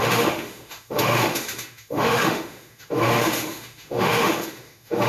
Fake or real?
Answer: fake